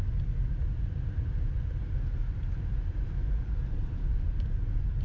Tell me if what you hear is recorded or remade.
recorded